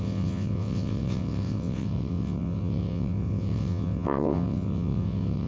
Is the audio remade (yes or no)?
yes